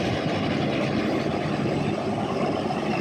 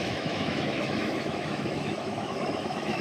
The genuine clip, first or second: first